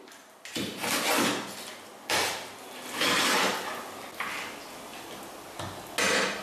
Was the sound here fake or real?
real